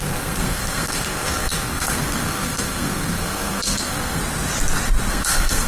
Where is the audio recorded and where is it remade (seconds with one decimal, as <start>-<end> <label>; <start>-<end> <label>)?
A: 0.0-4.2 remade; 4.2-5.1 recorded; 5.1-5.7 remade